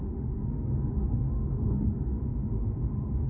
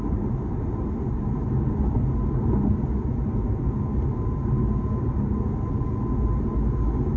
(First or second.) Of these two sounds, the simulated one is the first